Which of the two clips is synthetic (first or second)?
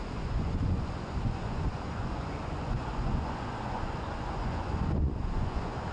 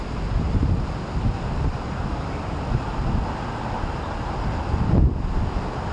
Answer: first